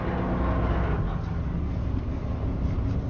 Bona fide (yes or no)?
yes